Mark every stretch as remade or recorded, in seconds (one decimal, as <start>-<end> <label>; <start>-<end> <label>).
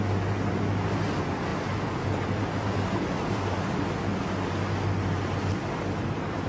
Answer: 0.0-6.5 recorded